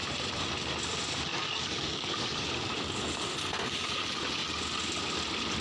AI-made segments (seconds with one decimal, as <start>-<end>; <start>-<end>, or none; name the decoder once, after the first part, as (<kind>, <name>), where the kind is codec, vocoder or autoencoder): 1.3-2.5 (codec, DAC)